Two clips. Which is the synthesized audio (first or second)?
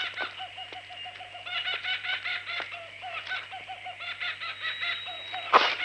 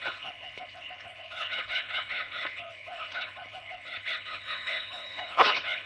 second